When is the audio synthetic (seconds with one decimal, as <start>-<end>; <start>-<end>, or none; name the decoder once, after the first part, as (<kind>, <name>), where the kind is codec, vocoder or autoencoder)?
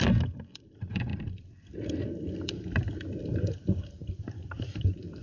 0.0-5.2 (vocoder, BigVGAN v2)